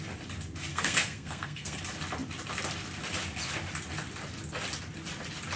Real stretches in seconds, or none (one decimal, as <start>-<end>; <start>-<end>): 0.0-0.7; 1.8-5.6